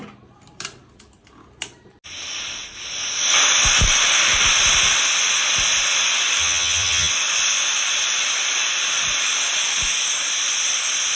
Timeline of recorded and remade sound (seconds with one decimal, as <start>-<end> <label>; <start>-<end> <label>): 0.0-6.4 recorded; 6.4-7.1 remade; 7.1-11.2 recorded